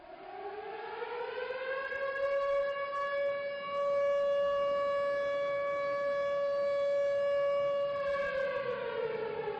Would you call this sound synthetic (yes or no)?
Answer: no